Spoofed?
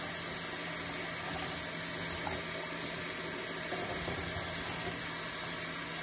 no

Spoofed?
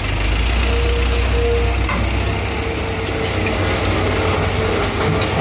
no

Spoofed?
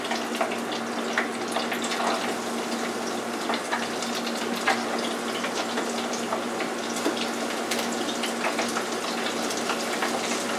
no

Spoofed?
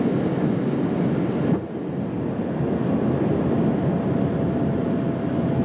no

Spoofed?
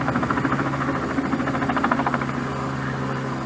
no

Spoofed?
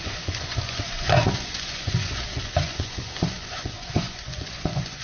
yes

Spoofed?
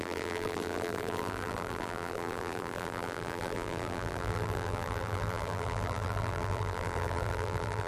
yes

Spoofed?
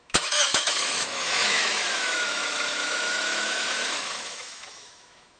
yes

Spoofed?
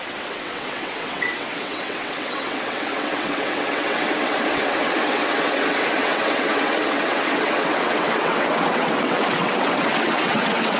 yes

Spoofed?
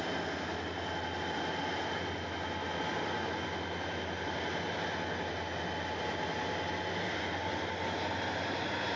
no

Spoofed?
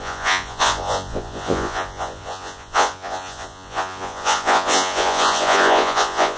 yes